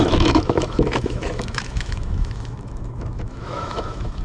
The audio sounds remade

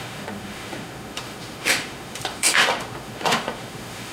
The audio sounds remade